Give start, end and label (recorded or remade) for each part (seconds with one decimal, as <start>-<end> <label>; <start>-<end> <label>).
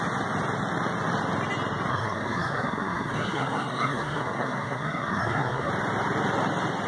0.0-1.9 recorded; 1.9-5.7 remade; 5.7-6.9 recorded